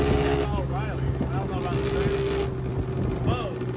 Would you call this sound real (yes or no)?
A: yes